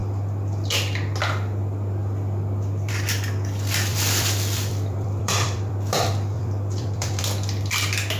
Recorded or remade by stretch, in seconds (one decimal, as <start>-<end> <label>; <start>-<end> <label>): 0.0-3.9 recorded; 3.9-7.2 remade; 7.2-8.2 recorded